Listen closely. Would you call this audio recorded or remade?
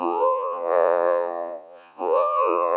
remade